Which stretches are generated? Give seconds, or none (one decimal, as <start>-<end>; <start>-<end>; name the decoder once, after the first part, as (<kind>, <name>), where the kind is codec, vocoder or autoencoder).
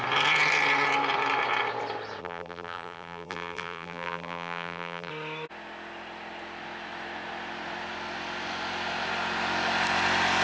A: 2.2-5.1 (vocoder, BigVGAN v2)